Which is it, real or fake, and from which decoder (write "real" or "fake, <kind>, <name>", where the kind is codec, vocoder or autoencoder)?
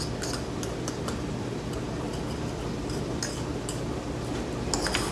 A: real